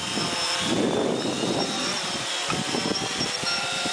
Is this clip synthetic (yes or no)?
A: no